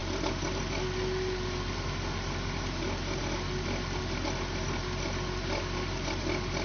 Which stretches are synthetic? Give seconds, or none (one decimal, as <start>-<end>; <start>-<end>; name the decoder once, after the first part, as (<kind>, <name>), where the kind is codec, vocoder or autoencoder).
none